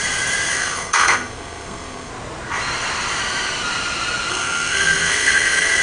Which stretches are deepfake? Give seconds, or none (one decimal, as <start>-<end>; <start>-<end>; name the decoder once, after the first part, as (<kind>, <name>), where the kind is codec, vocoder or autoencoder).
0.5-2.1 (codec, SNAC); 4.3-5.8